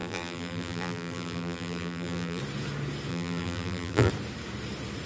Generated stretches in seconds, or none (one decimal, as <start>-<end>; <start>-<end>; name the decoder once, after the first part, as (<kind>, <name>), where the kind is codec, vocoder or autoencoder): 0.0-2.4 (vocoder, BigVGAN v2); 3.1-4.1